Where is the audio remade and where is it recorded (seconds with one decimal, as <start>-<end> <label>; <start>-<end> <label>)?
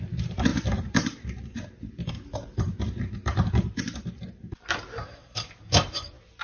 0.0-6.4 remade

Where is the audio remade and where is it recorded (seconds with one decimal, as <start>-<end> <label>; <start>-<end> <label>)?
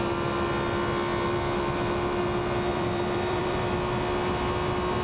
0.0-2.7 recorded; 2.7-3.6 remade; 3.6-5.0 recorded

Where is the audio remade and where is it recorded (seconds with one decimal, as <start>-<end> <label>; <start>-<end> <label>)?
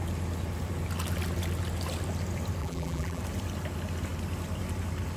0.0-2.6 recorded; 2.6-3.2 remade; 3.2-5.2 recorded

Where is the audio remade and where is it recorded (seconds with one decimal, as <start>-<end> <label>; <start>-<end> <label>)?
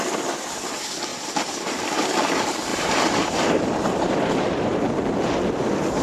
0.0-1.1 recorded; 1.1-1.8 remade; 1.8-2.7 recorded; 2.7-4.8 remade; 4.8-6.0 recorded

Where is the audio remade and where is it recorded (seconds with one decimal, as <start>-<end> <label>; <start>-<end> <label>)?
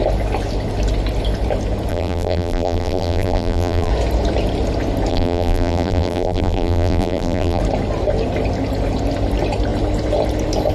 0.0-1.9 recorded; 1.9-3.9 remade; 3.9-5.1 recorded; 5.1-7.6 remade; 7.6-10.7 recorded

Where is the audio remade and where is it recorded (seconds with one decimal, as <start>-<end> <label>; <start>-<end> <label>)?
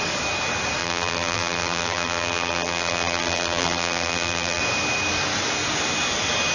0.0-0.8 recorded; 0.8-4.6 remade; 4.6-6.5 recorded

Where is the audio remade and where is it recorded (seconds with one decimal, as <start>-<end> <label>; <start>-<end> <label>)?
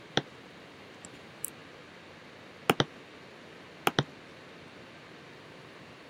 0.0-1.6 remade; 1.6-5.3 recorded; 5.3-6.1 remade